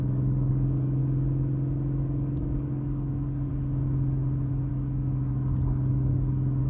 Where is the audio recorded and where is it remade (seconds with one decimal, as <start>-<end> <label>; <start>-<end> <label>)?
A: 0.0-1.0 remade; 1.0-2.0 recorded; 2.0-3.5 remade; 3.5-4.7 recorded; 4.7-6.7 remade